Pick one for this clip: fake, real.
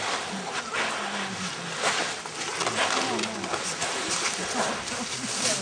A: real